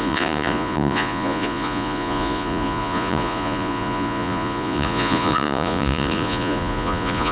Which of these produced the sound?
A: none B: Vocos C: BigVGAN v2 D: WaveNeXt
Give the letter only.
B